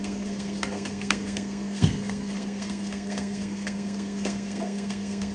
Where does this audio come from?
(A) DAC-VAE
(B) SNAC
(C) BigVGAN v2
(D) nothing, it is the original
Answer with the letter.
B